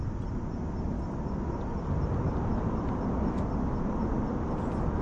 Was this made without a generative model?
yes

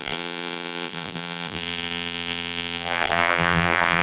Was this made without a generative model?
no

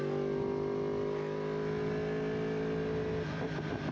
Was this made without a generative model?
yes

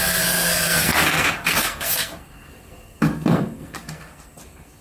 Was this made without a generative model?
no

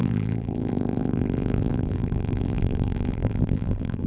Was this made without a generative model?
no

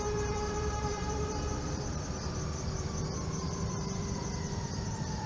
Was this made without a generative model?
no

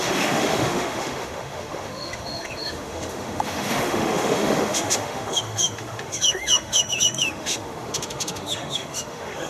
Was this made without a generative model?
no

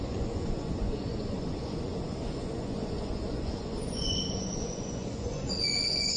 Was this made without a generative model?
no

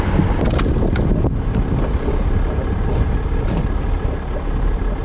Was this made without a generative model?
yes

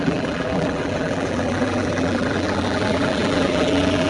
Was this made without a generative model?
no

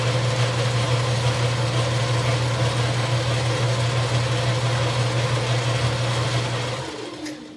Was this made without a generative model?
yes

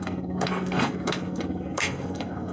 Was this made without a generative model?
no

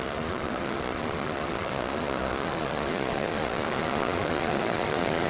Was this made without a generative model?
no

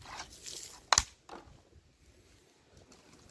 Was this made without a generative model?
yes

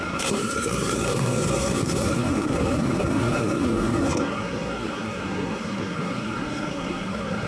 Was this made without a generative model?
no